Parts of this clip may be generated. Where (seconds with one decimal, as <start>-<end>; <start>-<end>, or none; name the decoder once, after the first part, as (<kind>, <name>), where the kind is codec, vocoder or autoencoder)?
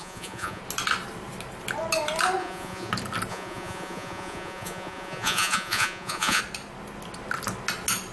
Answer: 0.0-0.6 (vocoder, Vocos); 2.4-2.9; 3.3-6.4